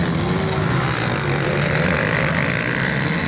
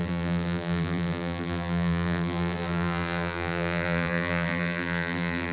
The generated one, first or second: second